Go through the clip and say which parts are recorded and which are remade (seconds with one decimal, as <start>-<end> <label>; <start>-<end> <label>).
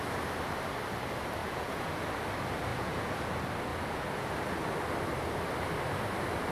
0.0-1.4 recorded; 1.4-2.0 remade; 2.0-2.7 recorded; 2.7-3.3 remade; 3.3-3.7 recorded; 3.7-4.3 remade; 4.3-6.5 recorded